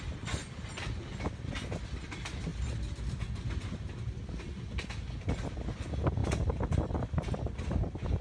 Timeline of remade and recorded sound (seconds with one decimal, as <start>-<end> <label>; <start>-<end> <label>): 0.0-8.2 recorded